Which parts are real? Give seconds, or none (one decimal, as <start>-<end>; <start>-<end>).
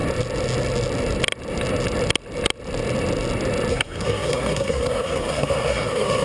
0.0-3.7